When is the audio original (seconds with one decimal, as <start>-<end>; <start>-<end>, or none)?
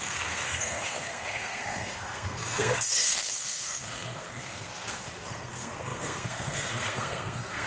none